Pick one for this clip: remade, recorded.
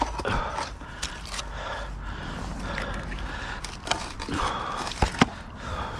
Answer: recorded